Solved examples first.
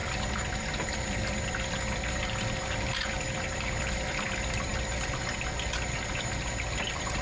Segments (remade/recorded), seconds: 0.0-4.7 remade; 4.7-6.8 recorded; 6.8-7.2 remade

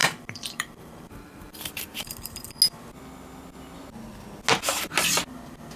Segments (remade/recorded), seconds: 0.0-2.6 remade; 2.6-5.8 recorded